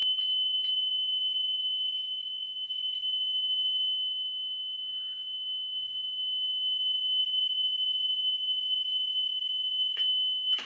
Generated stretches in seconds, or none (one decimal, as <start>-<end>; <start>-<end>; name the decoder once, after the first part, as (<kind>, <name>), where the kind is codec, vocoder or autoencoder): 3.0-7.2 (codec, DAC); 9.3-10.7